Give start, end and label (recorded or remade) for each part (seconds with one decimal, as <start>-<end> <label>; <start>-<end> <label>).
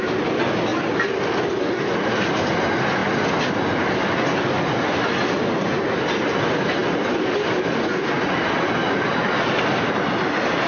0.0-10.7 recorded